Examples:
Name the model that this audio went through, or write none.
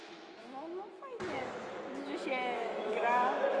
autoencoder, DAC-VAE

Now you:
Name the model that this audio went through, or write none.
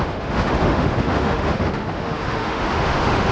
autoencoder, DAC-VAE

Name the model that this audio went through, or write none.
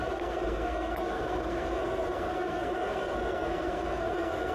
codec, SNAC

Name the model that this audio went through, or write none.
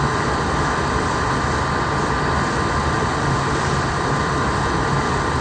none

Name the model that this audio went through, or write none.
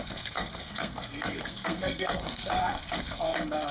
codec, SNAC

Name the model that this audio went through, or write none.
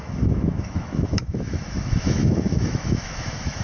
autoencoder, DAC-VAE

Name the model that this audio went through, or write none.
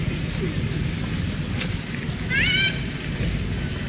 none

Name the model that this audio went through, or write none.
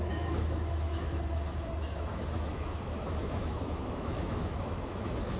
autoencoder, DAC-VAE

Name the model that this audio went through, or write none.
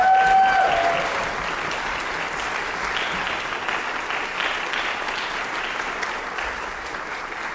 none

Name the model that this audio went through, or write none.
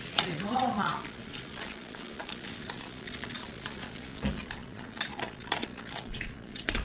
vocoder, Vocos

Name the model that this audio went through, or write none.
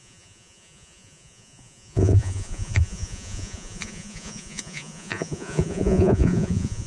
vocoder, Vocos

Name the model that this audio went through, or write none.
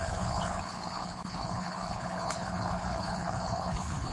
codec, HILCodec